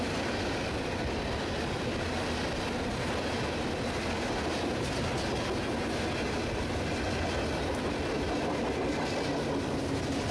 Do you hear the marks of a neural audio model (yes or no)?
no